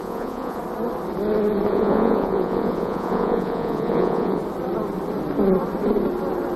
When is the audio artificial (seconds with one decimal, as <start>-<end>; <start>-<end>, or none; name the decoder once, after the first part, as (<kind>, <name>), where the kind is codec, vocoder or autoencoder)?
0.0-0.6 (vocoder, Vocos); 1.7-4.4